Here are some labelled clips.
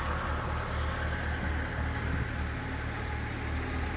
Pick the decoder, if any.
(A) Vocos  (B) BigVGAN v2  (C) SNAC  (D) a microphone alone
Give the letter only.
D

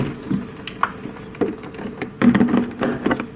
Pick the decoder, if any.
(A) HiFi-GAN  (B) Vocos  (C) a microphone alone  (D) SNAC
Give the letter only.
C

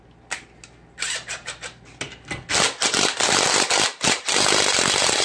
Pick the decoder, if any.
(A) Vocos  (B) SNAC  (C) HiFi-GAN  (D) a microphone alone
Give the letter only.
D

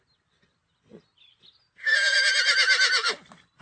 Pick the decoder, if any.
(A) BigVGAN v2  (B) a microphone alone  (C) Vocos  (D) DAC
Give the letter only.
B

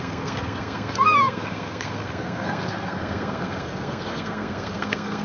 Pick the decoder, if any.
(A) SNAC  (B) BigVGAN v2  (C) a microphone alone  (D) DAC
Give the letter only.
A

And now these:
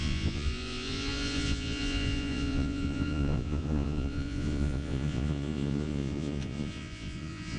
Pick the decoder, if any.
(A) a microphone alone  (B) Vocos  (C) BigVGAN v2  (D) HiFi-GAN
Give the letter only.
B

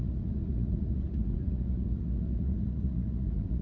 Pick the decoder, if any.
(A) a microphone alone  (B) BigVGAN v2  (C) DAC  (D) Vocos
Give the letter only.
D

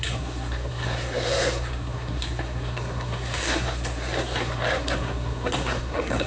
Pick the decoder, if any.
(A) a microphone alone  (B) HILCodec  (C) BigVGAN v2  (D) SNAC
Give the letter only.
D